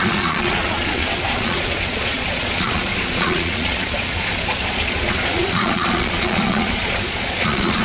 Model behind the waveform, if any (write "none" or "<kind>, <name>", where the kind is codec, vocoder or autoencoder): vocoder, Vocos